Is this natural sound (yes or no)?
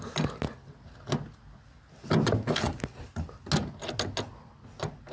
yes